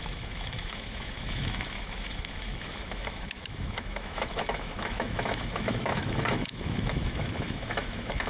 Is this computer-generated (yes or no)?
yes